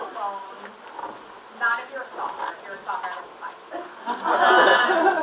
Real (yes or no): yes